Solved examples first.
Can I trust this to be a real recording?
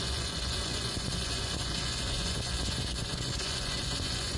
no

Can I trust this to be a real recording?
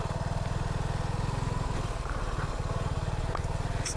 yes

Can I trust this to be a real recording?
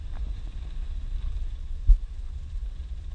no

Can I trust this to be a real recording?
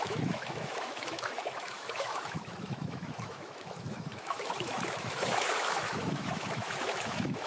no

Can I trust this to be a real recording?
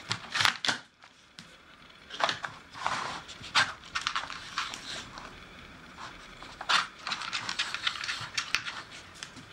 no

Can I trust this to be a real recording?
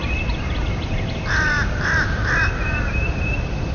yes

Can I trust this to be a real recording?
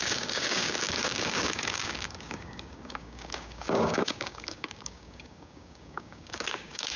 no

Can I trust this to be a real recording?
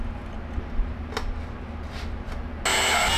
yes